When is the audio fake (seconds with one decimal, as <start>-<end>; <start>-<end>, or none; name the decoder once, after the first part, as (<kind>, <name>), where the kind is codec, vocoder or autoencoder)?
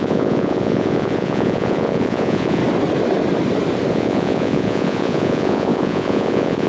0.0-2.6 (vocoder, Vocos); 3.9-6.7